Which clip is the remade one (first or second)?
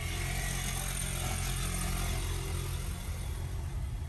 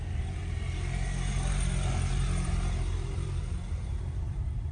second